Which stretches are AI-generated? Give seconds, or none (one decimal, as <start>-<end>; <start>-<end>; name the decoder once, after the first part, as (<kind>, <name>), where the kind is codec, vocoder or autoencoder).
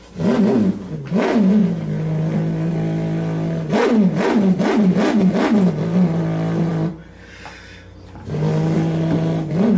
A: none